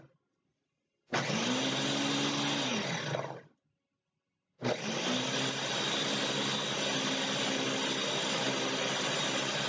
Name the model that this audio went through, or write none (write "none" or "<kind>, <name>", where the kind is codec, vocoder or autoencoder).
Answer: none